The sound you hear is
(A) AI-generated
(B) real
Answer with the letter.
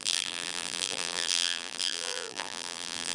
A